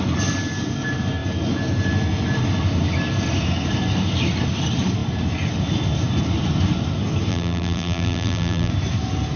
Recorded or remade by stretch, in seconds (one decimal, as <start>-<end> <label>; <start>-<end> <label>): 0.0-7.3 recorded; 7.3-8.7 remade; 8.7-9.4 recorded